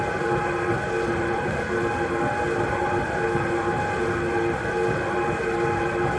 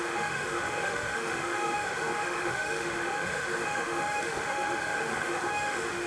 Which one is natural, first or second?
first